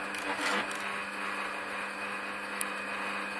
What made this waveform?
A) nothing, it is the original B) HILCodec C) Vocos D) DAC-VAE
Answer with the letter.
A